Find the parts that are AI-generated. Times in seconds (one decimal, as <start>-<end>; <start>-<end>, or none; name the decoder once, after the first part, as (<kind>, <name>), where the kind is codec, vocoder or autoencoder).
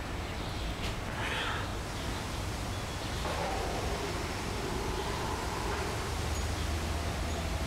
none